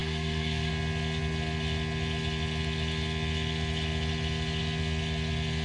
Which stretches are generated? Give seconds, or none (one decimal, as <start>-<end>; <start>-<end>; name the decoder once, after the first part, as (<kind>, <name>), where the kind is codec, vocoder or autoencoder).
0.0-0.7 (codec, SNAC)